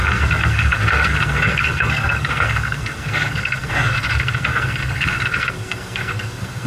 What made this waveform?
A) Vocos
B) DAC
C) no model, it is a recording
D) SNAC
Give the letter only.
D